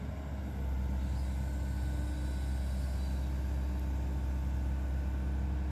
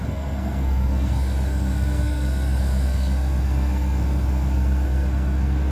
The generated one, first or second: second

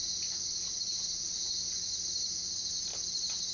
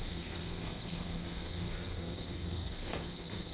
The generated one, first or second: second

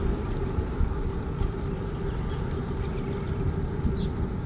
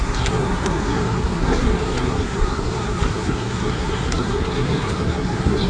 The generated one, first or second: second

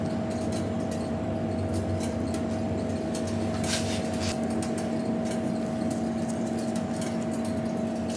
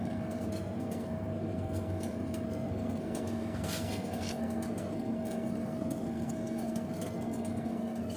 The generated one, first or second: second